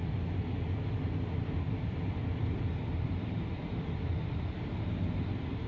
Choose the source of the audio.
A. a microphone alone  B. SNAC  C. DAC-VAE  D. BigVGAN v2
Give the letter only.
A